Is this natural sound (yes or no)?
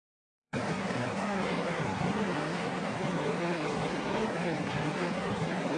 no